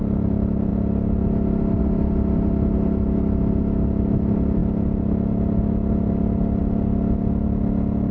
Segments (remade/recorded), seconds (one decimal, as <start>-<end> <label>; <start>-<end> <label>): 0.0-8.1 recorded